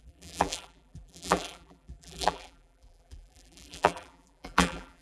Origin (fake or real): fake